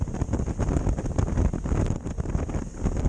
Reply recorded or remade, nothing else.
recorded